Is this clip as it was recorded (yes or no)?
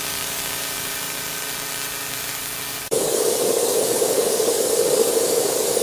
no